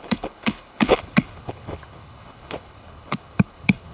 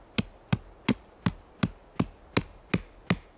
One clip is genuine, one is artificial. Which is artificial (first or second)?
first